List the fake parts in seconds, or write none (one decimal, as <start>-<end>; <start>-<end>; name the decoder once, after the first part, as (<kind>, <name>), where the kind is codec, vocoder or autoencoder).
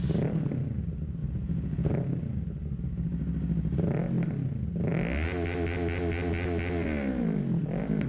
1.2-1.9 (vocoder, Vocos)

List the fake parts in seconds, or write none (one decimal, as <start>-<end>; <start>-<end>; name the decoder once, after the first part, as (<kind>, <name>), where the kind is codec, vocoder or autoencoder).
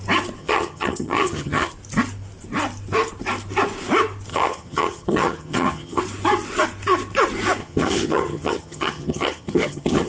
0.4-1.7 (vocoder, HiFi-GAN); 4.3-6.0; 7.6-10.1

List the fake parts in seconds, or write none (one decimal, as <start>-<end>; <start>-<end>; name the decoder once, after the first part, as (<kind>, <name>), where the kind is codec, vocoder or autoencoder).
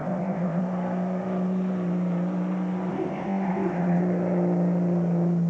0.0-0.6 (codec, ZipCodec); 2.9-4.0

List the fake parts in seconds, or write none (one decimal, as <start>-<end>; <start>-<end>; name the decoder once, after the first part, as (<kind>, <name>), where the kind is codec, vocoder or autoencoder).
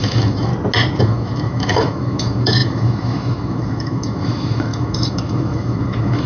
0.0-0.5 (autoencoder, DAC-VAE); 1.0-6.3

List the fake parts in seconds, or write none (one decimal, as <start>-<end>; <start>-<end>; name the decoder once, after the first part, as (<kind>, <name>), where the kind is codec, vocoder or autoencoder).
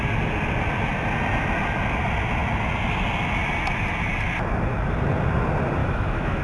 5.8-6.4 (autoencoder, DAC-VAE)